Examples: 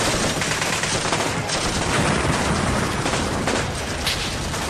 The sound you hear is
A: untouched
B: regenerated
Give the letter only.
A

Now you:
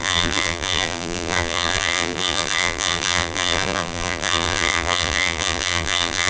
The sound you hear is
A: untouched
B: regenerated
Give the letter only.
B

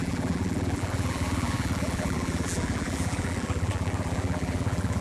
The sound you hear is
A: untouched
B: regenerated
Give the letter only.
B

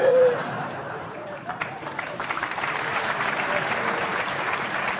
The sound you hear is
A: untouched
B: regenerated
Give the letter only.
B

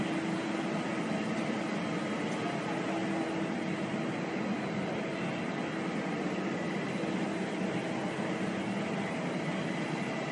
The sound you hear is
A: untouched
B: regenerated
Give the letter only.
A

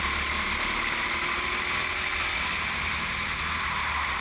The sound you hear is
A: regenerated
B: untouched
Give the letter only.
B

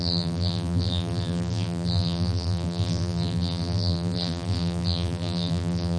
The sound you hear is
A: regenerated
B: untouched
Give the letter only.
A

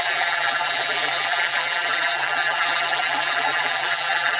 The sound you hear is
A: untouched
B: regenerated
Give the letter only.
B